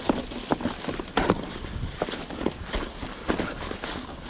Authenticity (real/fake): real